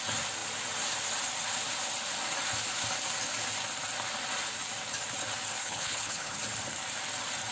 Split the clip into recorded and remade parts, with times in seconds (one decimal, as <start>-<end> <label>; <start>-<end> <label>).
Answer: 0.0-5.6 recorded; 5.6-6.4 remade; 6.4-7.5 recorded